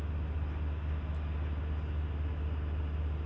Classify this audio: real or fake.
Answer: real